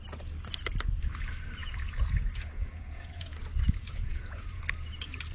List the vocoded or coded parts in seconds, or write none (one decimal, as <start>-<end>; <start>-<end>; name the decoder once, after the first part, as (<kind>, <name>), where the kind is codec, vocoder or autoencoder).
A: 1.6-4.6 (vocoder, Vocos)